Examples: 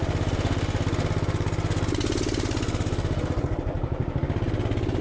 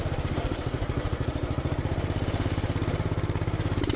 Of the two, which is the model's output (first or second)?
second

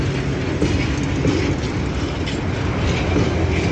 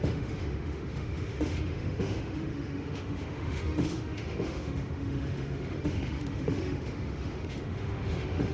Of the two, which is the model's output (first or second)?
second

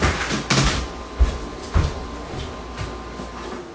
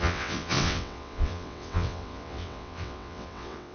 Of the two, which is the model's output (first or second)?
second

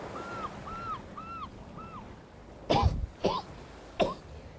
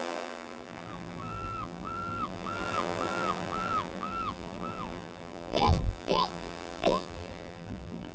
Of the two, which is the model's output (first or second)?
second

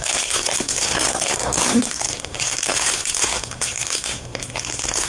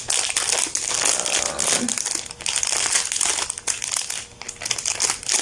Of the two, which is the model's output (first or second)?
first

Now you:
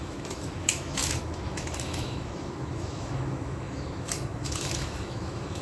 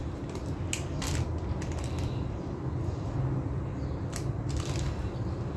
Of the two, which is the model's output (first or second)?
first